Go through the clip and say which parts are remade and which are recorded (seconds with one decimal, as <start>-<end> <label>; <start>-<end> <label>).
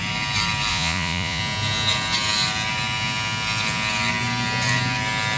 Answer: 0.0-0.7 recorded; 0.7-1.4 remade; 1.4-5.4 recorded